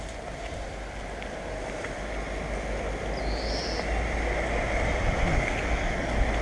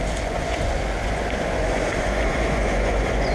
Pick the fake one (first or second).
second